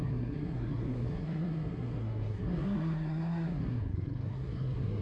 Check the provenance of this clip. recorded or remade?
remade